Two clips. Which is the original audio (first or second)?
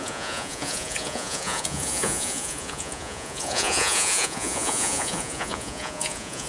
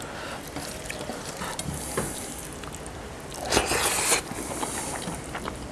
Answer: second